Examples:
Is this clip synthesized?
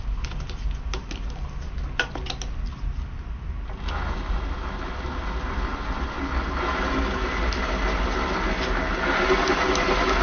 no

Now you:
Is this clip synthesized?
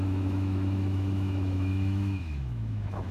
yes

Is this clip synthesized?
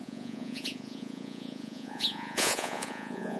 yes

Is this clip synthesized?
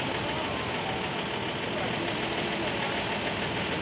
no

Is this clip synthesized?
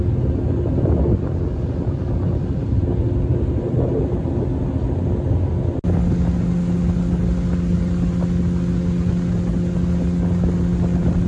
no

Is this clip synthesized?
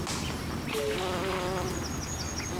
no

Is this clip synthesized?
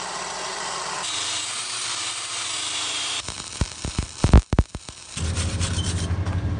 yes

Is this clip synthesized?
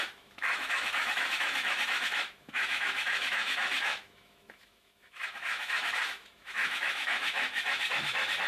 yes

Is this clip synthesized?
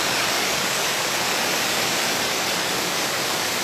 yes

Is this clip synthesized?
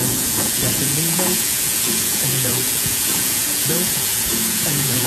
yes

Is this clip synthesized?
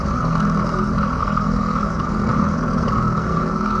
yes